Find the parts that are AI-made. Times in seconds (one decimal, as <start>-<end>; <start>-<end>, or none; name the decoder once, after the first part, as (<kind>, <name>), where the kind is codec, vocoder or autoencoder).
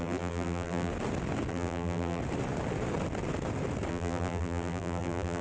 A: 0.0-0.9 (vocoder, BigVGAN v2); 1.5-2.2; 3.9-5.4